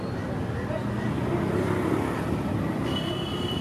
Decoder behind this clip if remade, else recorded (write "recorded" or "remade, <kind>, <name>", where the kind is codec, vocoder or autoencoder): recorded